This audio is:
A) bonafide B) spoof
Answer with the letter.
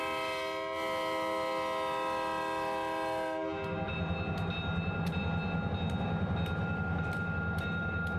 A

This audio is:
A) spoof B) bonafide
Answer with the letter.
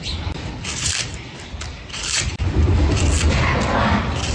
B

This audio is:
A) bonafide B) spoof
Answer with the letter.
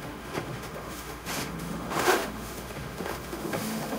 B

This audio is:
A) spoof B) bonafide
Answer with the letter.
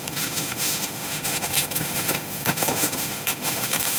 A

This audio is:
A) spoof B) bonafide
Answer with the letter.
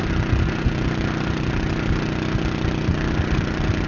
B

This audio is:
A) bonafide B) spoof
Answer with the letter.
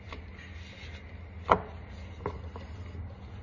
A